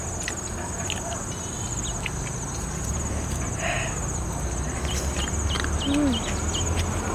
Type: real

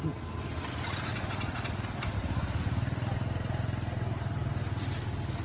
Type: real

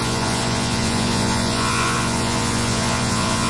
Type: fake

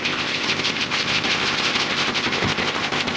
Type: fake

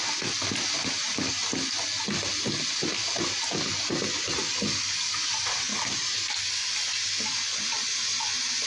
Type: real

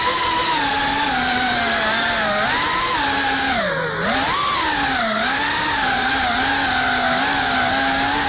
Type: real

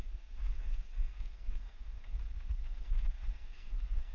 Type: fake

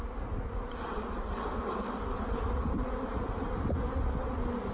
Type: real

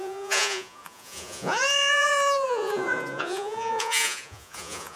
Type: fake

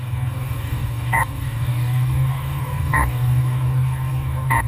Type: fake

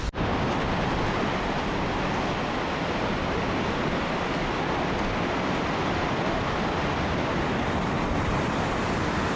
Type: real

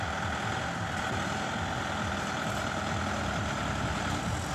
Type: real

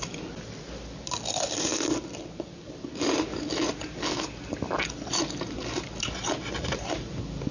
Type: real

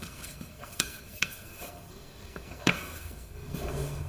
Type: fake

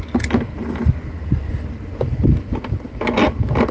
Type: real